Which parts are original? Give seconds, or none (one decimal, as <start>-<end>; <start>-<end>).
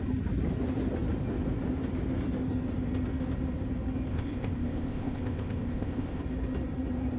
0.0-4.1; 6.2-7.2